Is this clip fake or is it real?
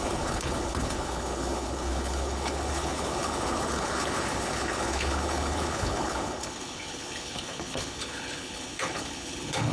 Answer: fake